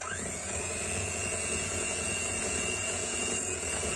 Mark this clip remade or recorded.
remade